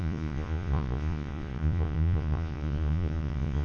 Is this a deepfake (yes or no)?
yes